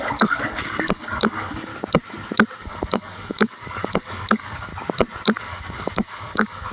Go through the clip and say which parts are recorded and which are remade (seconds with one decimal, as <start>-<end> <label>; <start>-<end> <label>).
0.0-1.7 remade; 1.7-2.6 recorded; 2.6-4.7 remade; 4.7-5.4 recorded; 5.4-6.7 remade